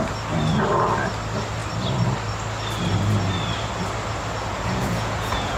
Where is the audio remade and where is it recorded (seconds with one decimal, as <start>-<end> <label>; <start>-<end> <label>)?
0.0-4.5 recorded; 4.5-5.6 remade